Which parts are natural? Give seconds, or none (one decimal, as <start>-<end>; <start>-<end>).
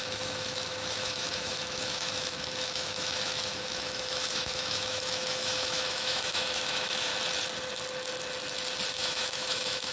7.1-8.9